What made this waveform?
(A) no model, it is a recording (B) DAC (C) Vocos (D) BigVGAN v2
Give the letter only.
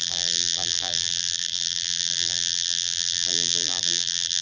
D